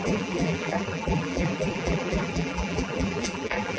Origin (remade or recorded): remade